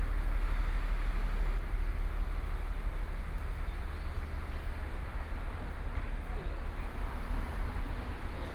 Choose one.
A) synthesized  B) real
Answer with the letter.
B